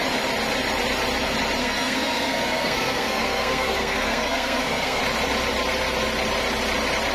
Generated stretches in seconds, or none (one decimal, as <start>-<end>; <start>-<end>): 1.6-5.0